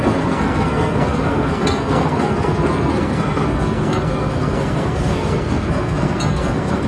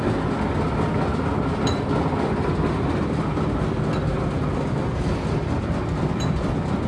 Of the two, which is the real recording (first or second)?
second